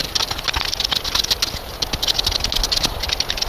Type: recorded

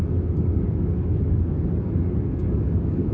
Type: remade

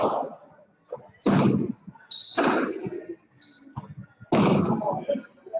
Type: recorded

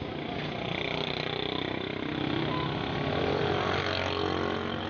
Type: recorded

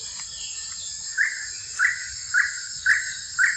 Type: recorded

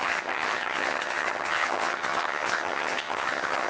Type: remade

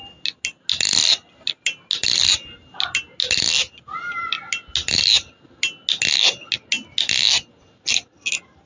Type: recorded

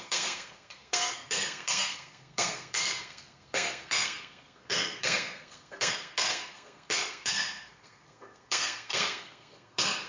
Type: remade